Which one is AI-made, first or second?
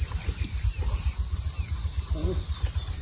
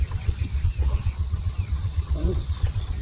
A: second